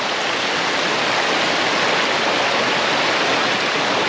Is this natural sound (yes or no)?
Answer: yes